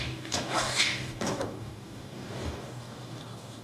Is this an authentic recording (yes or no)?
no